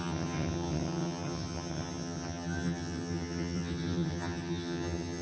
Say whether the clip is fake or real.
fake